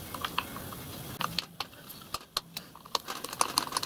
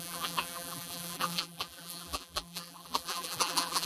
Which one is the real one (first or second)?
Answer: first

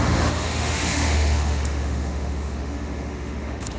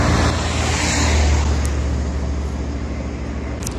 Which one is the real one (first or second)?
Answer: second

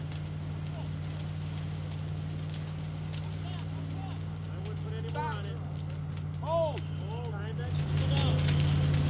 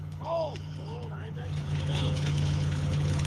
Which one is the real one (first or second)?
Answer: first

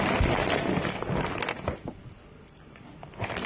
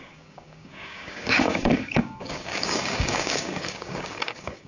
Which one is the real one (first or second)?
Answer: first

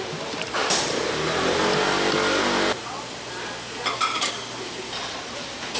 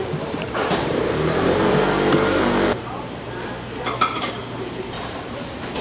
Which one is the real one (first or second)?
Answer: first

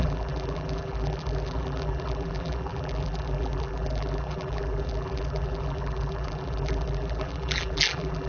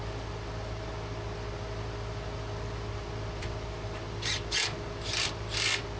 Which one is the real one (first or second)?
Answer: second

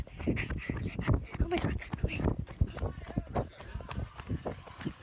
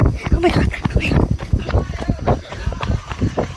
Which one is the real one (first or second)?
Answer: first